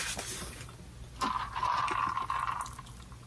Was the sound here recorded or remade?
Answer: recorded